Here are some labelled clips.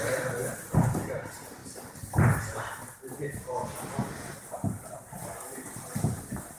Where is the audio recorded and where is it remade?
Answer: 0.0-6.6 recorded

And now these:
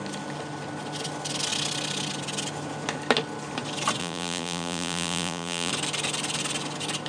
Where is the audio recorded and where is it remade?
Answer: 0.0-4.0 recorded; 4.0-5.7 remade; 5.7-7.1 recorded

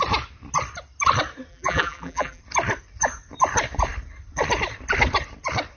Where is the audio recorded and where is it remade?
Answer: 0.0-1.5 recorded; 1.5-2.4 remade; 2.4-5.8 recorded

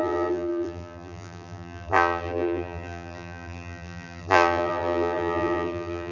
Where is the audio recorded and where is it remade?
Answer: 0.0-6.1 remade

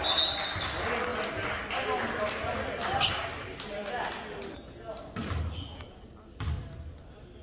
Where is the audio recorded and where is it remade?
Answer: 0.0-7.4 recorded